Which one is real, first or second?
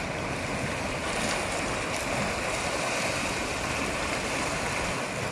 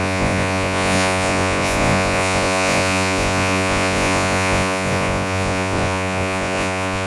first